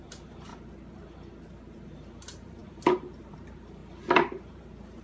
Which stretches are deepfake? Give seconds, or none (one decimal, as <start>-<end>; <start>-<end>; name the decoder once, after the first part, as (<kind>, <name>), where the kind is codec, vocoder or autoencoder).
0.0-0.5 (vocoder, BigVGAN v2); 1.4-3.8; 4.5-5.0